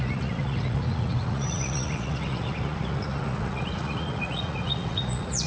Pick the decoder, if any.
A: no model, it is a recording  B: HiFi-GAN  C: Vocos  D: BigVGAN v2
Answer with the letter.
C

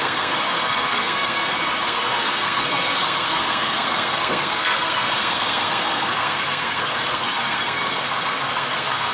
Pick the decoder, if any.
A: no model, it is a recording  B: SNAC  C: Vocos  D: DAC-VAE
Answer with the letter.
B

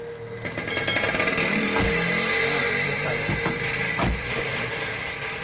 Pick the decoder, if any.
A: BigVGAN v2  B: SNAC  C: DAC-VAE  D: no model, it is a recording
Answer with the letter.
D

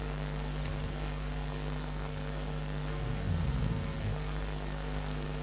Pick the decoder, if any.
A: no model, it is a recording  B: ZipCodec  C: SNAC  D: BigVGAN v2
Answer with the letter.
C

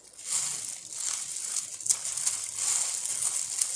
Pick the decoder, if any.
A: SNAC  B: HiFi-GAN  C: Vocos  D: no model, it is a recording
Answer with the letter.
D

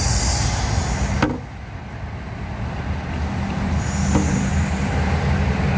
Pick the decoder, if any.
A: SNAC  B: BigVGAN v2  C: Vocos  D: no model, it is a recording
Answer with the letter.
D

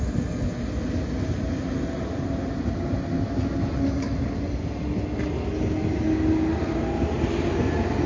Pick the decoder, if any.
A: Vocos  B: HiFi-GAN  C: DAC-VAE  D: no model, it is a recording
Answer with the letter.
D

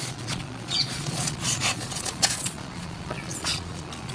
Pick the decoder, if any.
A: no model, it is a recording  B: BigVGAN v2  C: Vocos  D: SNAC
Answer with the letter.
C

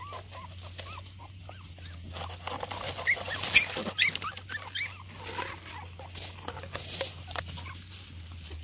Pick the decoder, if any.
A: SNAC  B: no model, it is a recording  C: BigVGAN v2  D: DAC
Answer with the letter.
B